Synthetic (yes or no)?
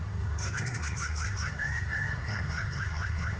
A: yes